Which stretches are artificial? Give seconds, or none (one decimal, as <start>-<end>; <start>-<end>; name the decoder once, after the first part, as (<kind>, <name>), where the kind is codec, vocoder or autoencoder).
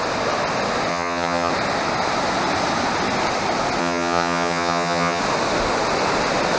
0.9-1.5 (vocoder, HiFi-GAN); 3.8-5.2